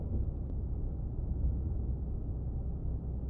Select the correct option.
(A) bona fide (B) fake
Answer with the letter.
A